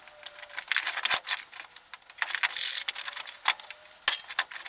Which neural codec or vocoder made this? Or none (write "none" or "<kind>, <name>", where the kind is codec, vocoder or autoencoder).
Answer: none